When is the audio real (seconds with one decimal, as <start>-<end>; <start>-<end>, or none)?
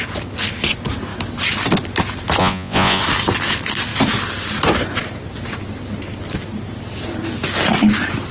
0.0-2.4; 3.0-8.3